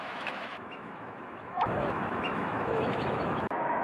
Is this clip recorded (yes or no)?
no